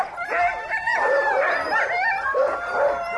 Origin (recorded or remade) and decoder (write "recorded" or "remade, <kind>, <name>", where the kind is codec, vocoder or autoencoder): recorded